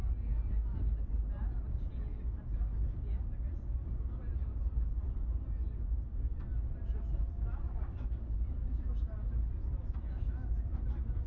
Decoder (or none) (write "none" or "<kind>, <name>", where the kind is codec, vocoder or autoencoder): none